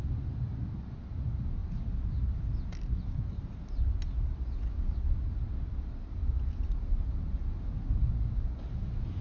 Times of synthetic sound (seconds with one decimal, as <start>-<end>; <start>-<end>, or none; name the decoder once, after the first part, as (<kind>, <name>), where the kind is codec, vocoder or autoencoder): none